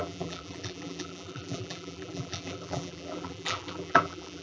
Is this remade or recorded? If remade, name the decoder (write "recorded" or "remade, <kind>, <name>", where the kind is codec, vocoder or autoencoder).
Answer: remade, vocoder, BigVGAN v2